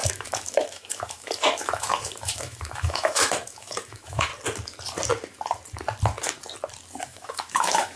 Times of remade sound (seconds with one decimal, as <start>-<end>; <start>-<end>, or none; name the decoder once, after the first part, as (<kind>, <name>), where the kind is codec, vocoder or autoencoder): 0.0-4.3 (autoencoder, DAC-VAE); 7.0-8.0